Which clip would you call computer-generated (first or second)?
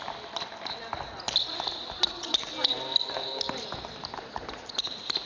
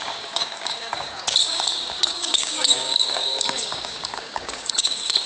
second